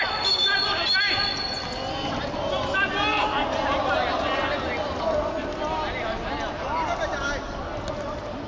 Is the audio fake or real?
real